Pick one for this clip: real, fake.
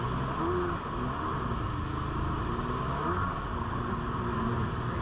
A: real